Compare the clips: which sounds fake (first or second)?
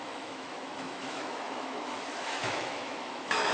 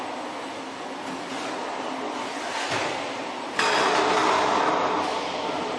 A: first